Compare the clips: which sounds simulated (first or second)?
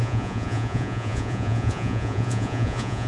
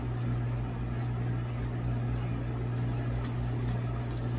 first